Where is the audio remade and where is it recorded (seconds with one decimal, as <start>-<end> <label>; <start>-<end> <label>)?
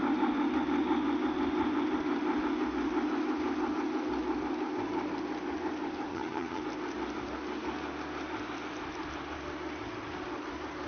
0.0-6.1 recorded; 6.1-6.6 remade; 6.6-10.9 recorded